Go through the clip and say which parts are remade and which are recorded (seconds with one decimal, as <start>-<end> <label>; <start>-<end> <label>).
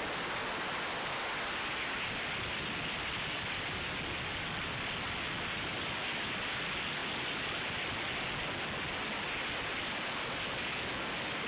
0.0-11.5 recorded